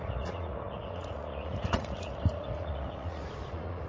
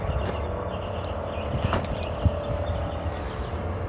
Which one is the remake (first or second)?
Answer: first